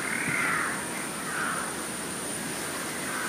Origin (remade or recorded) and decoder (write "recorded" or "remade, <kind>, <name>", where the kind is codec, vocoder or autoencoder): recorded